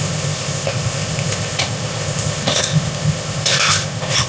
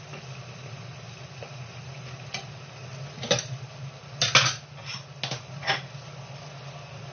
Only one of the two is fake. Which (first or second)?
first